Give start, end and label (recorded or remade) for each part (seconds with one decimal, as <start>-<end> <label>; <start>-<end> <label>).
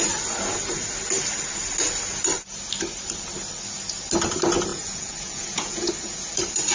0.0-4.7 recorded; 4.7-5.9 remade; 5.9-6.7 recorded